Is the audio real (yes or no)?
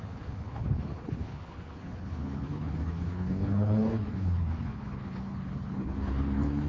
no